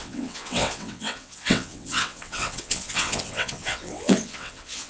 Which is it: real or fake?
fake